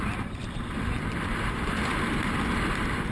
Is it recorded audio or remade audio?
remade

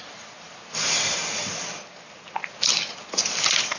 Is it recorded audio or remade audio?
recorded